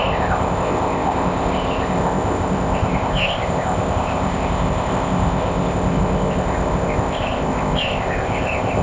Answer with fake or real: fake